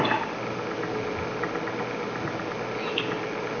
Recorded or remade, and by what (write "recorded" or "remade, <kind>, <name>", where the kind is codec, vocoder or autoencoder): recorded